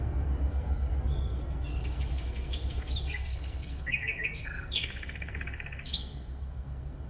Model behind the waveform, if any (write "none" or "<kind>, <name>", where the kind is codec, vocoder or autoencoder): codec, SNAC